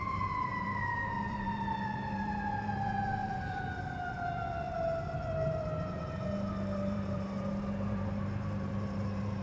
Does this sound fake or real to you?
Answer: fake